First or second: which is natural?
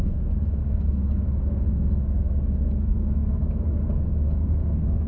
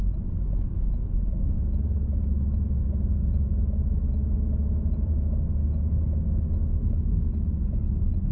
second